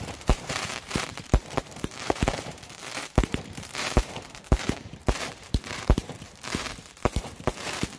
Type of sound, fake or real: fake